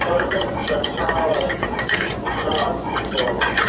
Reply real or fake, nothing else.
fake